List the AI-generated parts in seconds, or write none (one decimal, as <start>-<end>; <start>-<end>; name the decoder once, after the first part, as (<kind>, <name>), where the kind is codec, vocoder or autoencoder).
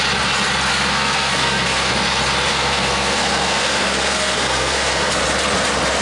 0.7-1.9 (codec, SNAC); 2.5-5.1